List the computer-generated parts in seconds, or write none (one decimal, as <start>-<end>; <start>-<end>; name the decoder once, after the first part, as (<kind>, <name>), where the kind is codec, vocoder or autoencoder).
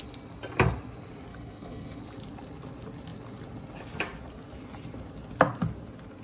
1.3-2.0 (codec, HILCodec)